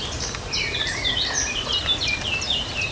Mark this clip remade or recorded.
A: recorded